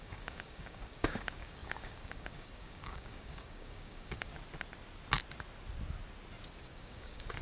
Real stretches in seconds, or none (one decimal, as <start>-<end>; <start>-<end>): 4.3-6.6